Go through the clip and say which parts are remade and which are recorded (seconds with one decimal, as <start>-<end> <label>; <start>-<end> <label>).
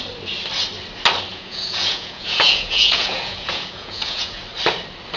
0.0-1.3 recorded; 1.3-4.4 remade; 4.4-5.2 recorded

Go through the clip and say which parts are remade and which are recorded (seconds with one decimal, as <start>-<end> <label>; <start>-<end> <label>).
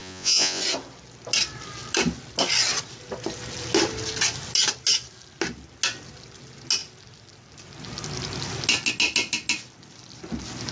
0.0-0.6 remade; 0.6-10.7 recorded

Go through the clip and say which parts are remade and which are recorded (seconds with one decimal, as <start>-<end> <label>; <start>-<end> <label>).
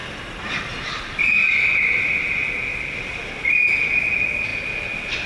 0.0-5.3 recorded